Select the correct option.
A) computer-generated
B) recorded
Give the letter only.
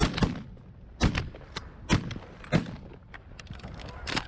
B